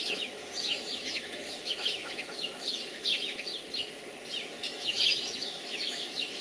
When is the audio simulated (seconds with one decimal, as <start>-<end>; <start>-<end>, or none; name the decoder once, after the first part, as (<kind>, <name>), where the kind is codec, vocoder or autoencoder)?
0.0-3.5 (autoencoder, DAC-VAE); 4.6-6.4